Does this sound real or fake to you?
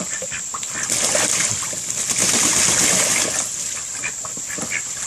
real